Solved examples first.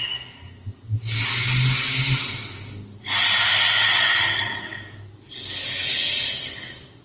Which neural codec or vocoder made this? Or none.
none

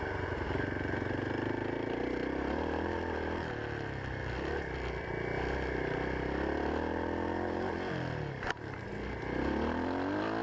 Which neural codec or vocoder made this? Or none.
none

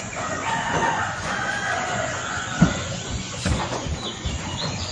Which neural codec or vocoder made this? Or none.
vocoder, Vocos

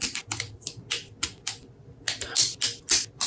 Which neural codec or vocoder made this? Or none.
none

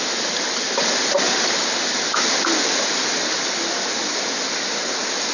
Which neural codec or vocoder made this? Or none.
none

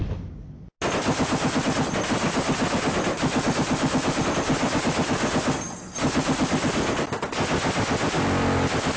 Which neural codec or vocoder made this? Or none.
none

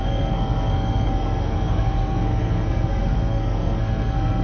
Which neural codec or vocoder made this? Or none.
codec, SNAC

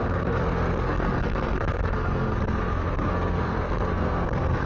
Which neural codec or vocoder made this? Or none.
codec, SNAC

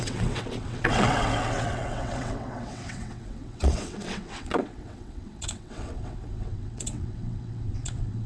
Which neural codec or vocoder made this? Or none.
vocoder, WaveNeXt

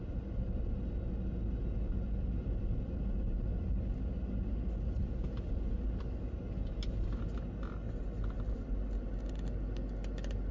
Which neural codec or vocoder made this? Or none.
none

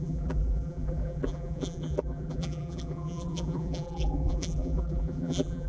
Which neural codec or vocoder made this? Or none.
vocoder, BigVGAN v2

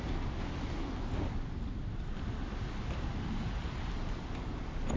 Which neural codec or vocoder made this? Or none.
none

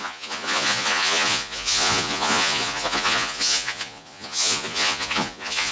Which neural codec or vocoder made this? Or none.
vocoder, Vocos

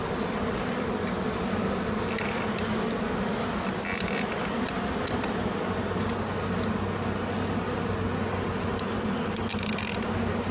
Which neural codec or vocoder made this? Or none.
none